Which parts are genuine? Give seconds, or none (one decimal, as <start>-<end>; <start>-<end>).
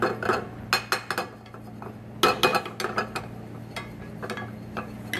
0.0-5.2